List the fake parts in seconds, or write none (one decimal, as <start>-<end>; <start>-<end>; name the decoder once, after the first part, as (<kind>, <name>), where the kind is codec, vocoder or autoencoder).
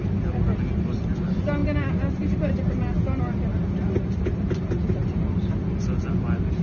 none